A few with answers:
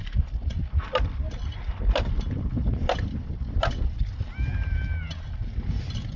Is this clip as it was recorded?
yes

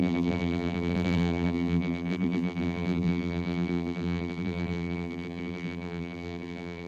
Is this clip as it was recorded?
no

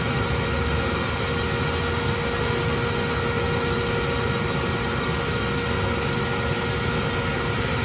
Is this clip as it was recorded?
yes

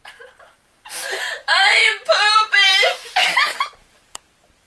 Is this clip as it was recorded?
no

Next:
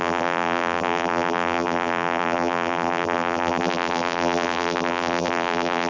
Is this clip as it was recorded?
no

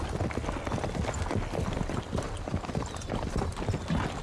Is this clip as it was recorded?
yes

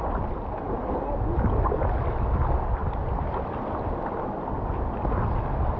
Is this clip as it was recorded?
yes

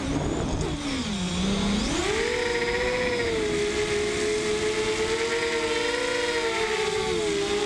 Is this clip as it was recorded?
yes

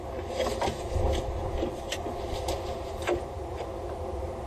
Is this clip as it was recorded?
yes